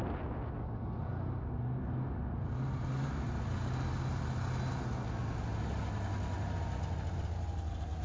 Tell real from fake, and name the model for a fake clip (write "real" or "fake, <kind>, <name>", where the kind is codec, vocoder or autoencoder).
real